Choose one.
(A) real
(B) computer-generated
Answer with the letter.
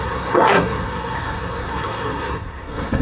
B